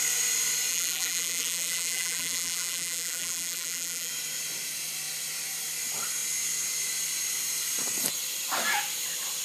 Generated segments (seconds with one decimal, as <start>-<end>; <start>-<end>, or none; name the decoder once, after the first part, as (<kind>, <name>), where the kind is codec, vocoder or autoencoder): 0.7-4.1 (vocoder, BigVGAN v2)